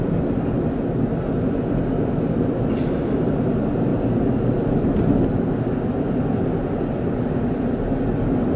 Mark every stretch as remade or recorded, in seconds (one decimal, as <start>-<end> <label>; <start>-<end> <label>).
0.0-8.6 recorded